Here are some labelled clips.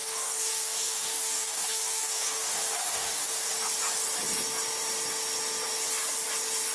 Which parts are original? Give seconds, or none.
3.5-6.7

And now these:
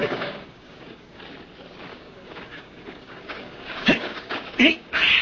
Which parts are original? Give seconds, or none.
1.2-1.9

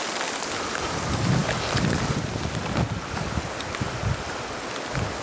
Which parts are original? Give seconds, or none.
0.0-5.2

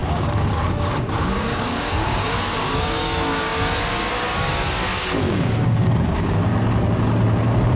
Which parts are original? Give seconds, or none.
6.5-7.8